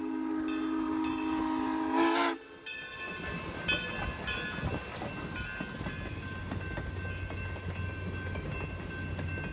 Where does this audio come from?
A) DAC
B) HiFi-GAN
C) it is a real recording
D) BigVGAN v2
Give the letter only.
C